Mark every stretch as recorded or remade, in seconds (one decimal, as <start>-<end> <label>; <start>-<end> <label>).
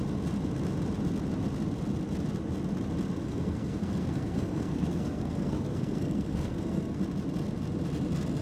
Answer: 0.0-3.2 recorded; 3.2-7.0 remade; 7.0-8.4 recorded